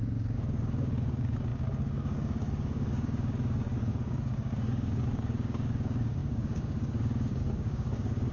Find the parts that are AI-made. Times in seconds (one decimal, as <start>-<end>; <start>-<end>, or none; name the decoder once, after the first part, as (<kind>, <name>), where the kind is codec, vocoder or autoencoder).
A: 0.0-8.3 (codec, DAC)